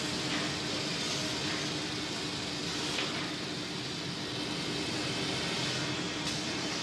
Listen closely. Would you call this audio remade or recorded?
recorded